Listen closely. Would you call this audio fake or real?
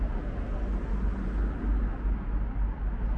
real